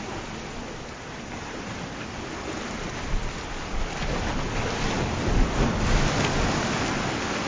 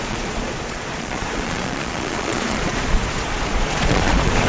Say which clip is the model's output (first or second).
second